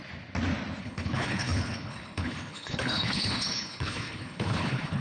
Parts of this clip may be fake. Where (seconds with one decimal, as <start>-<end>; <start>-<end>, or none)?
0.8-5.0